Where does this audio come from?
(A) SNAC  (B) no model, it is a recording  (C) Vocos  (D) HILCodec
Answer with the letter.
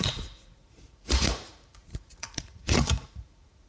C